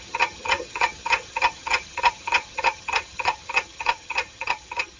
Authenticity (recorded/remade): remade